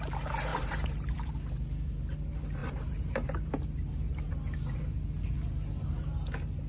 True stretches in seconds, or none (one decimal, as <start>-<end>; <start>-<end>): 0.0-0.5; 1.3-2.6; 4.3-6.7